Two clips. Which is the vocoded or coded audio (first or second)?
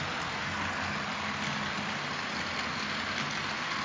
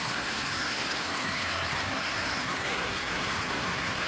second